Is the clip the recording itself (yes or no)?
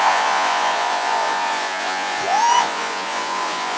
no